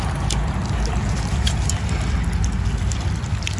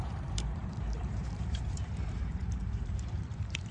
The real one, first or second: first